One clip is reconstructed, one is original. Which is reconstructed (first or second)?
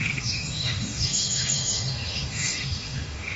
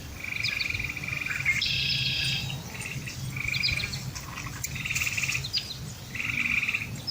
first